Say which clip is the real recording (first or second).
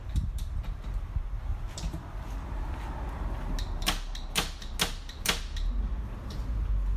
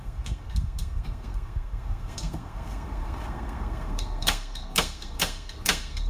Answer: first